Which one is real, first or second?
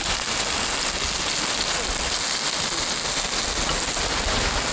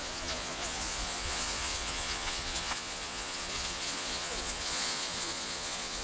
first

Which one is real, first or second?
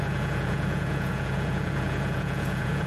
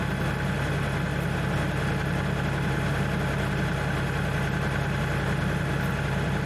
second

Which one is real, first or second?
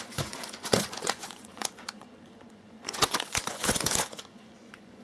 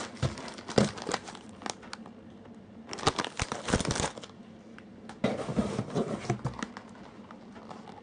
second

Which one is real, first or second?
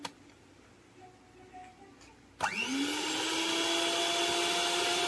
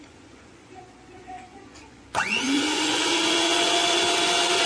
first